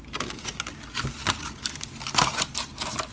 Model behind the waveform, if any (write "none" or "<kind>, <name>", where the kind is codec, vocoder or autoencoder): none